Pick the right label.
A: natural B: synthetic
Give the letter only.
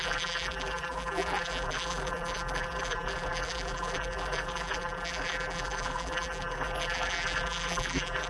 B